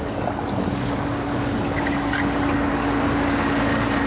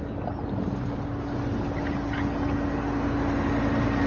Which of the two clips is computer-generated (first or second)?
first